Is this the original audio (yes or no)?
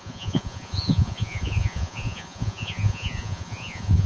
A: no